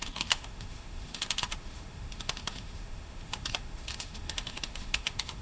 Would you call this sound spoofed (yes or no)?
yes